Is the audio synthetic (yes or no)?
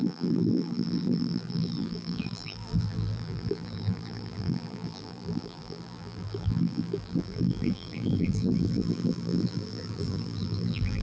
yes